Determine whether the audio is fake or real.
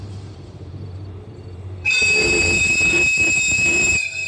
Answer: fake